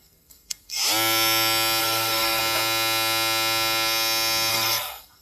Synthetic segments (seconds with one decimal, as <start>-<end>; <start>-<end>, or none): 0.0-0.8; 1.8-2.4; 4.5-5.2

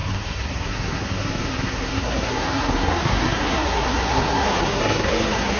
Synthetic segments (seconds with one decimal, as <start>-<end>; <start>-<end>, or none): 0.0-5.6

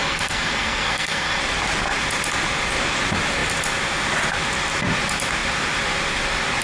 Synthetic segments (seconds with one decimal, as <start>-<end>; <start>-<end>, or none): 0.0-1.4

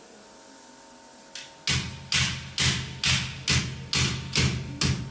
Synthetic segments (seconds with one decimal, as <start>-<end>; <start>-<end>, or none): none